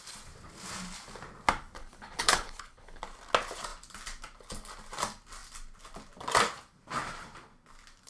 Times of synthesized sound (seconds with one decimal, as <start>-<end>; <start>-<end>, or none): 1.8-3.0